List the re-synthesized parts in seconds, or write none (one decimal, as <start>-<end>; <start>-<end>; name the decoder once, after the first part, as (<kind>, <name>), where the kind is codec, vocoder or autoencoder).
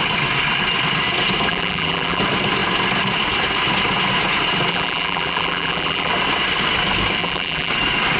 1.5-2.2 (vocoder, BigVGAN v2); 4.7-6.1; 7.2-7.7